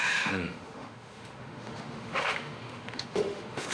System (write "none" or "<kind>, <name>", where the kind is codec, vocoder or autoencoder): autoencoder, DAC-VAE